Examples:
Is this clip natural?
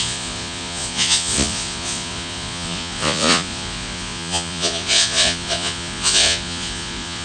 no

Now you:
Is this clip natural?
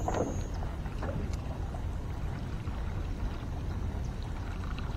yes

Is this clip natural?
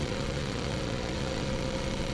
no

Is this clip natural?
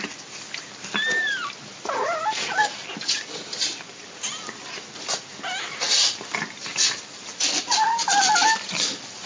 yes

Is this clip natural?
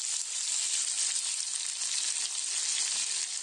yes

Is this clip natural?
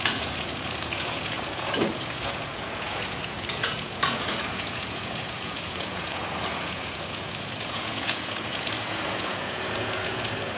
no